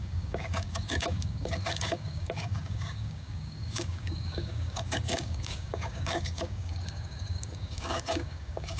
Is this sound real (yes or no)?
no